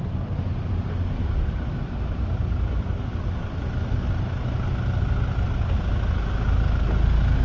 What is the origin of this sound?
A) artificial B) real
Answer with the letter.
B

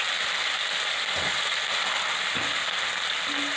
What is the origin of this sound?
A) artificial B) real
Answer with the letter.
B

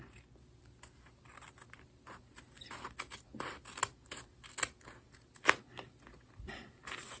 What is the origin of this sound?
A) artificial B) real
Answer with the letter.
B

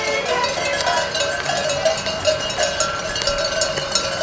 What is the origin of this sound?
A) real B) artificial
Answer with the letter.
A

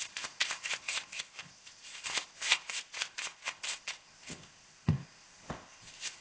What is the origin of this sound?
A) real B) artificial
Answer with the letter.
B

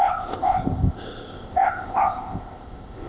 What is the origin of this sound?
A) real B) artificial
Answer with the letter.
B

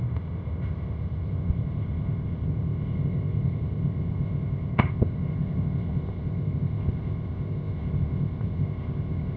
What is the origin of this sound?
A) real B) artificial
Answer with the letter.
B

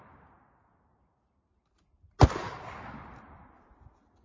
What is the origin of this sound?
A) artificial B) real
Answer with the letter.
B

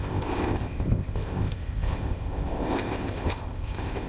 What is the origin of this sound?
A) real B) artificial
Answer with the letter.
B